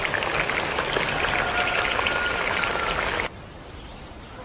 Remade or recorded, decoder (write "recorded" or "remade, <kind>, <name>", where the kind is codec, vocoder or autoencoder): recorded